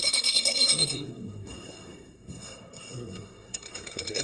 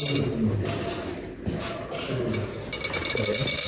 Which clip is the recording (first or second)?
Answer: second